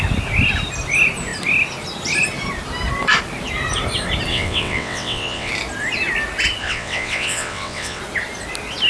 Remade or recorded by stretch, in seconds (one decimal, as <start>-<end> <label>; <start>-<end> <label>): 0.0-4.3 recorded; 4.3-5.5 remade; 5.5-6.6 recorded; 6.6-8.0 remade; 8.0-8.9 recorded